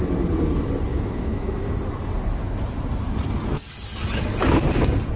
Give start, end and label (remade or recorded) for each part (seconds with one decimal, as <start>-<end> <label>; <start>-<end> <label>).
0.0-0.9 recorded; 0.9-1.7 remade; 1.7-5.2 recorded